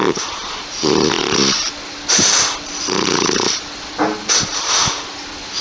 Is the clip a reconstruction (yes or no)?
no